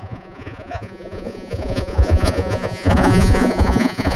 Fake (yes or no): yes